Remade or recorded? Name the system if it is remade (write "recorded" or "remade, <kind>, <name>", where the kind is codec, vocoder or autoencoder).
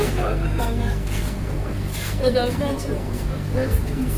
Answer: remade, codec, SNAC